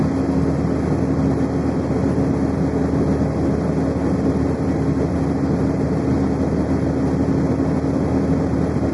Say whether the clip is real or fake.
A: real